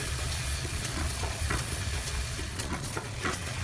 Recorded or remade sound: remade